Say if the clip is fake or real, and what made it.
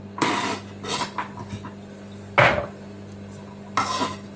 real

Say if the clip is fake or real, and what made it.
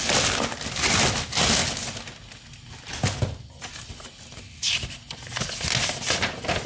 real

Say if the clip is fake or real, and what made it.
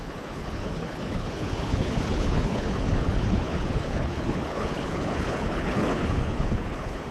fake, codec, HILCodec